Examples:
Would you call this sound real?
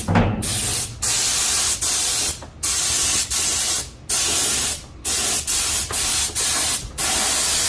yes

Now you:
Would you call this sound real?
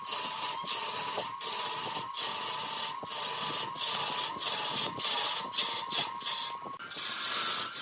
yes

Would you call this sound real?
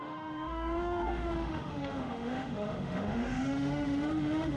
no